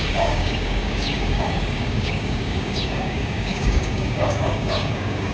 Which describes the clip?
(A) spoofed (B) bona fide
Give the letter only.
A